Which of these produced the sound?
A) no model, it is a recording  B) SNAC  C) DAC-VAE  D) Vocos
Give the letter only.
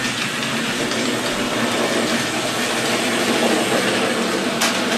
A